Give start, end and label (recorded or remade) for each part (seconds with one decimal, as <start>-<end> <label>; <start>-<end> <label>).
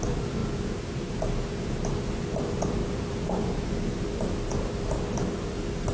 0.0-5.9 recorded